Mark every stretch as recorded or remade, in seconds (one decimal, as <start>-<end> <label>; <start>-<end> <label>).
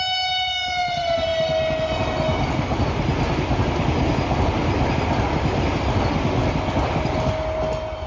0.0-8.1 recorded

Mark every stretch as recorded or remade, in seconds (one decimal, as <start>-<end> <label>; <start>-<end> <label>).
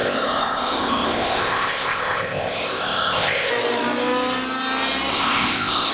0.0-3.5 remade; 3.5-5.1 recorded; 5.1-5.9 remade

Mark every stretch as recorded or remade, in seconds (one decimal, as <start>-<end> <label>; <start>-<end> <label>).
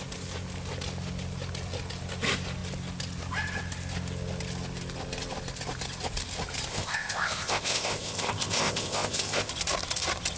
0.0-6.7 recorded; 6.7-9.5 remade; 9.5-10.4 recorded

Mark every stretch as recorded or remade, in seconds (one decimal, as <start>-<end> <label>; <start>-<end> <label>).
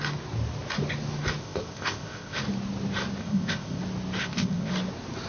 0.0-1.4 recorded; 1.4-2.4 remade; 2.4-3.2 recorded; 3.2-3.8 remade; 3.8-4.2 recorded; 4.2-4.7 remade; 4.7-5.3 recorded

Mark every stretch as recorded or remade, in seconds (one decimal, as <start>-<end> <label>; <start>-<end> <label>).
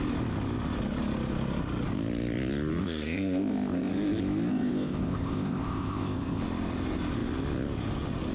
0.0-2.8 recorded; 2.8-3.9 remade; 3.9-4.5 recorded; 4.5-6.4 remade; 6.4-8.3 recorded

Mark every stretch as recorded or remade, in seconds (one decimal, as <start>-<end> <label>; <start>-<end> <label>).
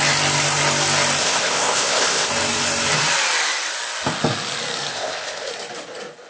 0.0-1.2 recorded; 1.2-2.3 remade; 2.3-4.9 recorded; 4.9-5.5 remade; 5.5-6.3 recorded